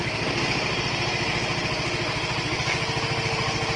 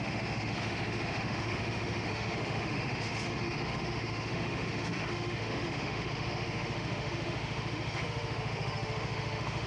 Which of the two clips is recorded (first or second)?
first